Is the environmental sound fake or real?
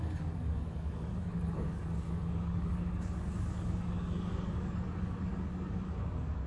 fake